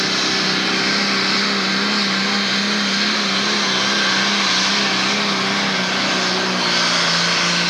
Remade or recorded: recorded